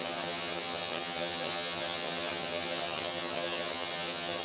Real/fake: fake